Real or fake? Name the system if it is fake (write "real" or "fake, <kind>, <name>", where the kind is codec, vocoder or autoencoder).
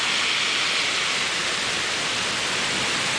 real